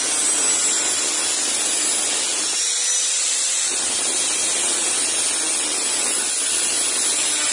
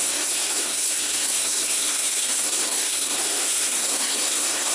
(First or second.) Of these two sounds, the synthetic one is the second